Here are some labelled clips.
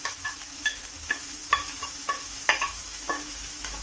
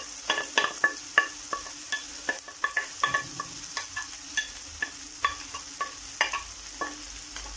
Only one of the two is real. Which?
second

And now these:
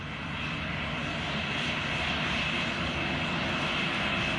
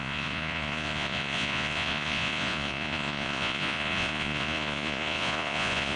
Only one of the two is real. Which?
first